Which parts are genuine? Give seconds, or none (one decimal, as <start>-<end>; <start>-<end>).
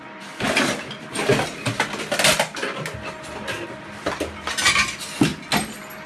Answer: 0.0-6.1